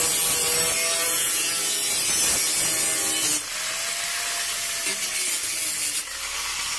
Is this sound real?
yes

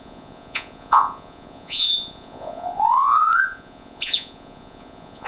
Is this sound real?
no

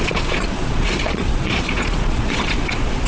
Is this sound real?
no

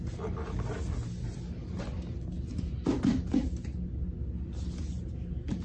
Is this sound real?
yes